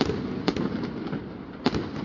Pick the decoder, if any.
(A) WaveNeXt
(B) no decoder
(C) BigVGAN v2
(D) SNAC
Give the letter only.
B